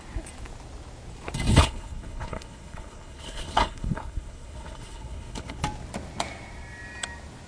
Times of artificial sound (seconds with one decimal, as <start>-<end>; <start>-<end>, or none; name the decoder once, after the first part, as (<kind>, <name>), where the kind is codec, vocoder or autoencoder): 1.5-5.6 (codec, HILCodec)